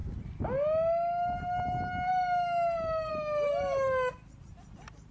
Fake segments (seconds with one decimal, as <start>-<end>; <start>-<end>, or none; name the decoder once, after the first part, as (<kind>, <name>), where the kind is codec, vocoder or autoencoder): none